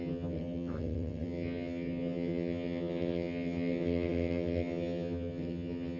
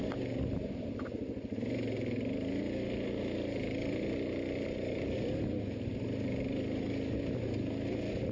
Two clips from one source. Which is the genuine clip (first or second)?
second